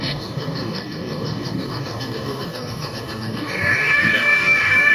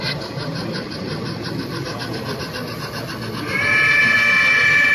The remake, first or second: first